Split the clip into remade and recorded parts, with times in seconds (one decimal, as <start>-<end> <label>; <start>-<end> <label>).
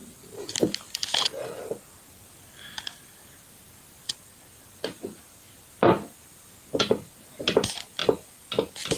0.0-9.0 recorded